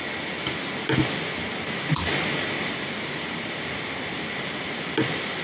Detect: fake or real real